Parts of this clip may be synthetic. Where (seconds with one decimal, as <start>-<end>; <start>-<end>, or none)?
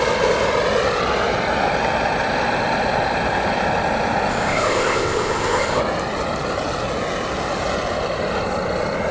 4.3-5.8